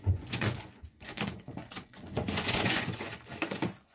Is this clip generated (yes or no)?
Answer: yes